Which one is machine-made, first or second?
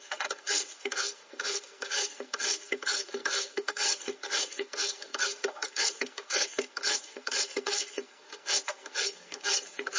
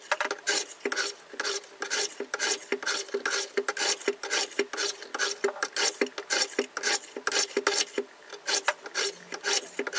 first